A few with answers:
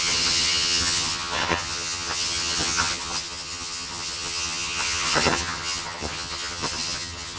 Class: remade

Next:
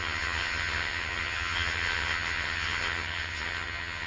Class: remade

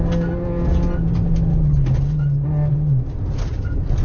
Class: recorded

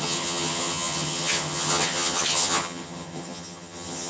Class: remade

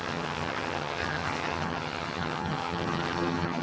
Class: remade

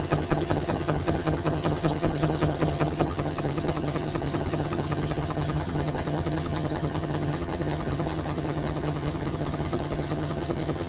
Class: remade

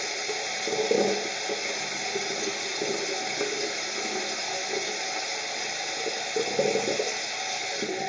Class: recorded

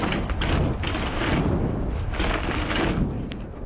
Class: recorded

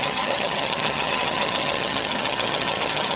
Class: remade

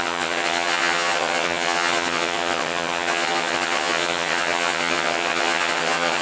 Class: remade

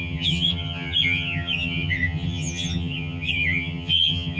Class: remade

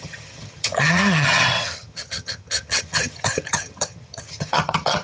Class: remade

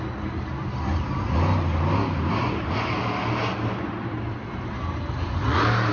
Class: recorded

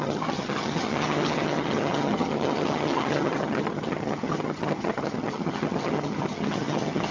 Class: remade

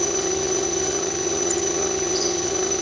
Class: remade